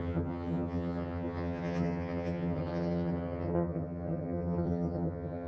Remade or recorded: remade